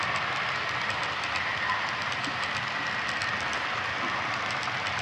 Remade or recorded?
recorded